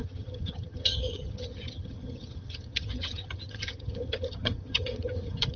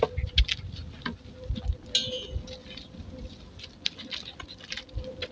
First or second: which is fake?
first